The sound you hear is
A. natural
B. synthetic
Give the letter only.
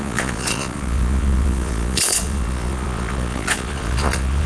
B